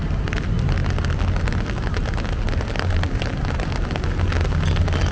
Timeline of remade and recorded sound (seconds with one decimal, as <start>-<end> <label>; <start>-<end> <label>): 0.0-5.1 recorded